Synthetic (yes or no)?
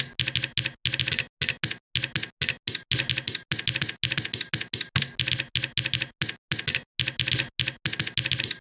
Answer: no